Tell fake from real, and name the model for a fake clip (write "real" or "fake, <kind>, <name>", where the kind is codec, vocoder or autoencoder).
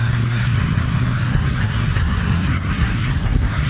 fake, codec, SNAC